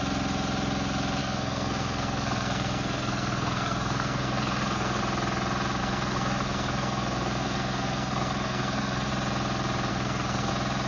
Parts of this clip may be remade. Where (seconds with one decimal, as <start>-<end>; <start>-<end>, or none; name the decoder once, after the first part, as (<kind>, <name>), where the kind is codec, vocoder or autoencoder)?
1.2-5.0 (codec, SNAC); 5.8-9.1; 9.9-10.5